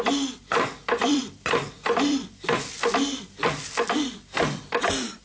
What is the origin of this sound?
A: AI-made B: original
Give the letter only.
A